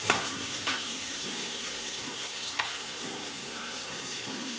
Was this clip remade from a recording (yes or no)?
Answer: yes